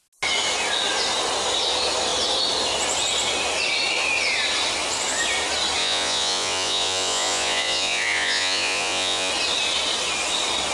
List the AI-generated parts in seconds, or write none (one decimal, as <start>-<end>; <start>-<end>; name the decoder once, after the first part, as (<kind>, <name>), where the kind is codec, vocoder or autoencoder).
5.8-9.3 (vocoder, Vocos)